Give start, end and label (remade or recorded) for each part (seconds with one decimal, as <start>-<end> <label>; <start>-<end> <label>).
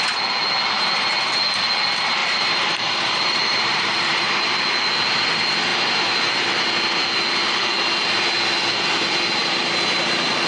0.0-2.2 recorded; 2.2-4.6 remade; 4.6-10.5 recorded